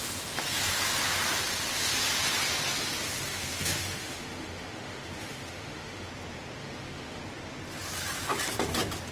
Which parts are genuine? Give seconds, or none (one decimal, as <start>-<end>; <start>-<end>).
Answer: 0.0-3.3; 6.1-6.6; 7.2-9.1